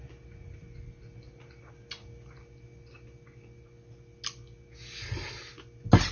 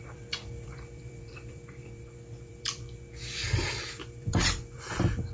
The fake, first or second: second